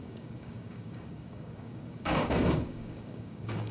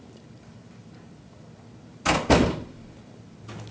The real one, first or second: second